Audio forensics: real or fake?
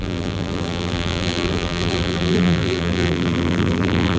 fake